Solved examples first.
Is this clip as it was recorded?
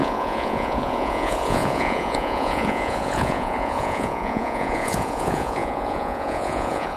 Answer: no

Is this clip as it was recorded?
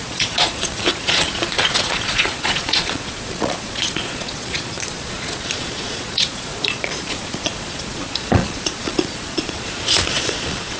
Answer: no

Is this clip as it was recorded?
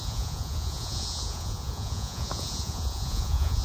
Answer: no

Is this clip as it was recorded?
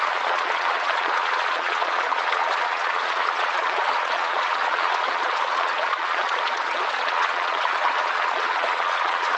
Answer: no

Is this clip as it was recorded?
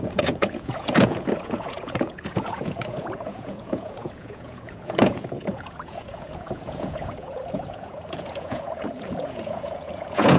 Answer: no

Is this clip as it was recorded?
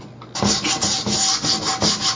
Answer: yes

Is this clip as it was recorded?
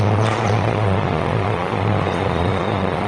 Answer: no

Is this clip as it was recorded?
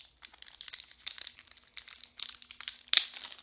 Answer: yes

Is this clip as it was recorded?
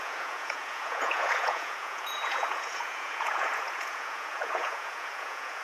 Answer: no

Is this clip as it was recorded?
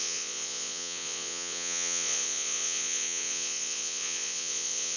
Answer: no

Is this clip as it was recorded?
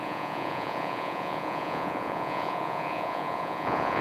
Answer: no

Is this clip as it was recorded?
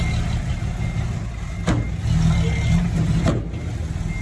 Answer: yes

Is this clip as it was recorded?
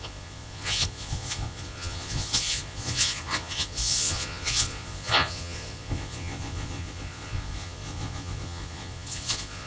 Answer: no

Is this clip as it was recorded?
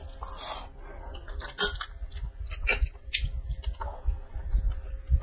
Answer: yes